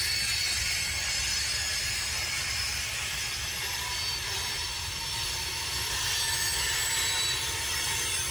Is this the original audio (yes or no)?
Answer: yes